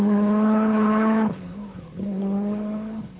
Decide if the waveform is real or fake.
fake